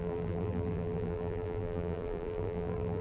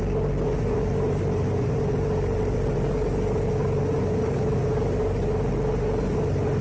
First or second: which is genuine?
second